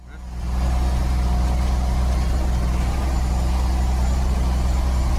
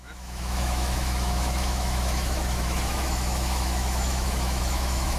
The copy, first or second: second